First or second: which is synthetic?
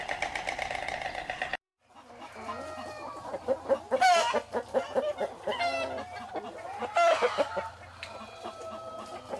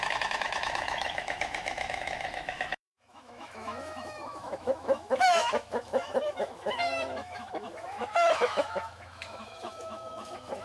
second